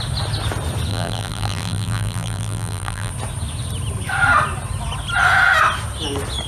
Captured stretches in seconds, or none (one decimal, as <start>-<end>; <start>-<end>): 0.0-0.9; 3.1-6.5